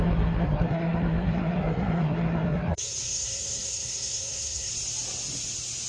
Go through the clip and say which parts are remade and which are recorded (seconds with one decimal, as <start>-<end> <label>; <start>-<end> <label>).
0.0-4.7 remade; 4.7-5.9 recorded